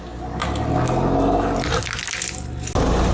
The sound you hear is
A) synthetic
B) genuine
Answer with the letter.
B